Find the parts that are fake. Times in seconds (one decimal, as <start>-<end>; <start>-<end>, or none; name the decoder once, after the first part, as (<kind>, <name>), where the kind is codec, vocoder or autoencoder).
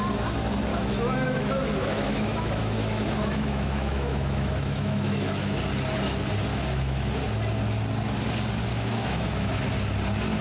0.7-5.6 (autoencoder, DAC-VAE); 6.5-7.1; 8.7-9.6